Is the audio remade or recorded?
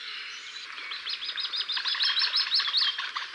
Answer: recorded